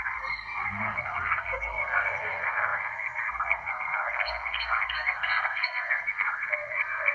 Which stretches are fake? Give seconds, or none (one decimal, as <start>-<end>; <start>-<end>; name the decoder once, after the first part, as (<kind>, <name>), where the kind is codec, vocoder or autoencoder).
0.0-7.1 (codec, SNAC)